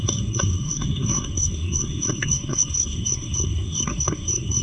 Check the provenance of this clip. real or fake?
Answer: fake